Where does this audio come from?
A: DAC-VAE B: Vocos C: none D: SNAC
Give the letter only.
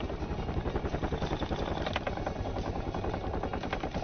C